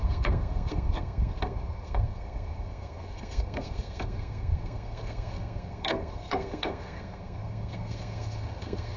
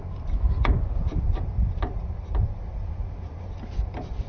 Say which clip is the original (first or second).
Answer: second